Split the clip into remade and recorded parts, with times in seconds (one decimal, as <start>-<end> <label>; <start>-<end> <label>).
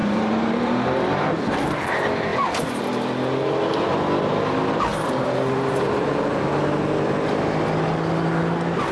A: 0.0-1.9 remade; 1.9-4.9 recorded; 4.9-6.4 remade; 6.4-8.9 recorded